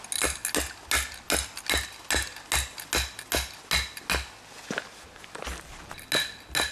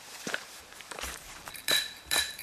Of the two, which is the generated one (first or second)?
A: second